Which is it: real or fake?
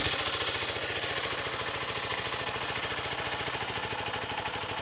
real